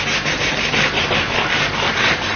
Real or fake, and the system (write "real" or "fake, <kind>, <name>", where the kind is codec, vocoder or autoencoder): real